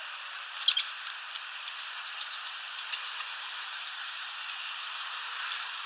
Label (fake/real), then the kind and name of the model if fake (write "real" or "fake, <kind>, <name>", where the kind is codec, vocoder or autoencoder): fake, vocoder, BigVGAN v2